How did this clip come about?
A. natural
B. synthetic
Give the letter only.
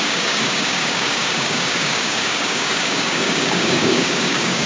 B